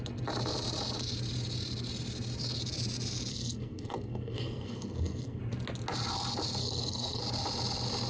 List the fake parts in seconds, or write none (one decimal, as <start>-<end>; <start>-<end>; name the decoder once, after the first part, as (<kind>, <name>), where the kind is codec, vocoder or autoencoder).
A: 3.3-5.4 (codec, SNAC); 6.6-7.2